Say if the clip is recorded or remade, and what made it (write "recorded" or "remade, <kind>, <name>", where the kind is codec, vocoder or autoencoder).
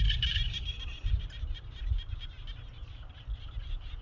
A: recorded